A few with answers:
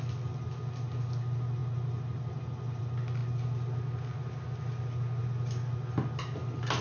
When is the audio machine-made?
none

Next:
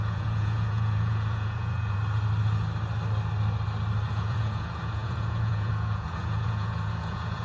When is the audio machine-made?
0.0-2.0 (vocoder, Vocos); 4.1-7.4

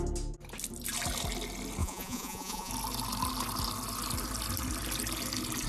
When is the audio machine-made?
1.8-2.7 (vocoder, Vocos)

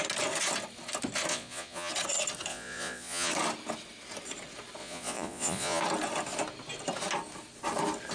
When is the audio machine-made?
1.3-1.9 (vocoder, Vocos); 2.5-3.3; 4.8-5.8

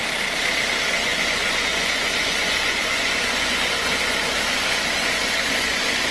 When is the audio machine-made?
0.9-6.1 (vocoder, Vocos)